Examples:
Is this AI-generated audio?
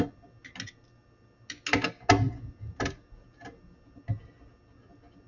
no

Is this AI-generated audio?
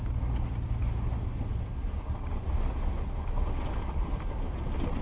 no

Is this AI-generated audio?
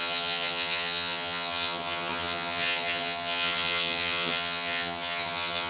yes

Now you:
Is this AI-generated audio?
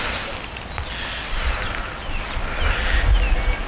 no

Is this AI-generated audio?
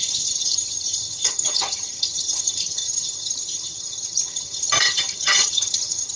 yes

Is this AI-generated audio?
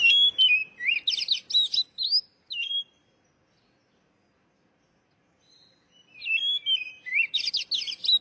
no